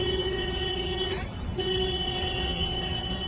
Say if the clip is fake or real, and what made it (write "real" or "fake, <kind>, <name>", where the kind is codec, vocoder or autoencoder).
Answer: fake, vocoder, WaveNeXt